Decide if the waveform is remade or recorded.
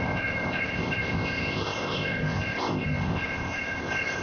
remade